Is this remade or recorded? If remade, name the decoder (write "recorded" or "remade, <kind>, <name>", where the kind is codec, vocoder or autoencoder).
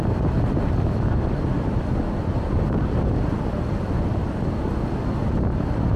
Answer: recorded